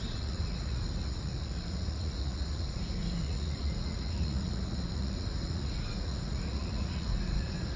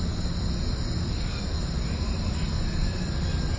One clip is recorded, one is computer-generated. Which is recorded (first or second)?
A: second